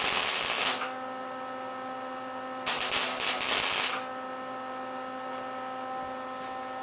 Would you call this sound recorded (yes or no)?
yes